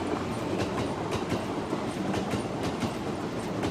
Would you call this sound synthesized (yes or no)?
no